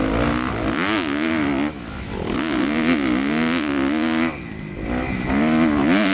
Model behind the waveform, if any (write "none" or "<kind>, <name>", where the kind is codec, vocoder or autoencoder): none